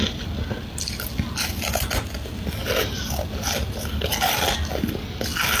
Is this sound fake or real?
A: real